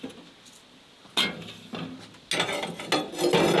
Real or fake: real